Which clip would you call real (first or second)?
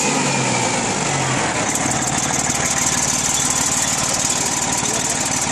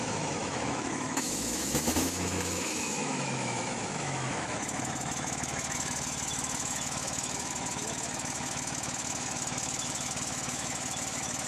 first